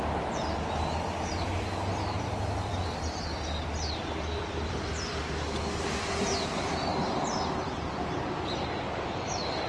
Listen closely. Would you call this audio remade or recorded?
remade